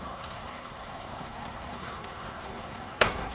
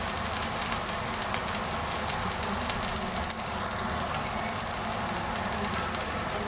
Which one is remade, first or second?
first